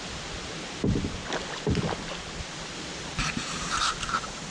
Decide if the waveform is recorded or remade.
recorded